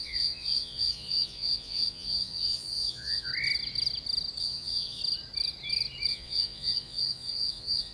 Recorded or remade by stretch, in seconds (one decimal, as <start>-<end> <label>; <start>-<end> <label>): 0.0-3.3 remade; 3.3-4.4 recorded; 4.4-5.0 remade; 5.0-6.1 recorded; 6.1-7.9 remade